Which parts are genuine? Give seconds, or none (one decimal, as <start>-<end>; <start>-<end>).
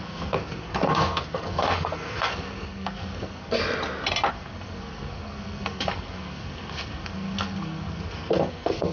3.6-4.3